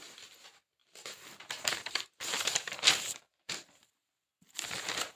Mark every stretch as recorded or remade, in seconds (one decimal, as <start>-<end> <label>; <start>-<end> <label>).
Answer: 0.0-0.8 recorded; 0.8-3.9 remade; 3.9-5.2 recorded